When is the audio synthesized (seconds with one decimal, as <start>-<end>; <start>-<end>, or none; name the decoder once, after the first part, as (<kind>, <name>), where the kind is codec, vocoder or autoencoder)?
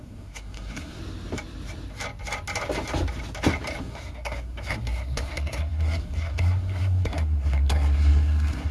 0.0-1.0 (codec, SNAC); 3.8-8.7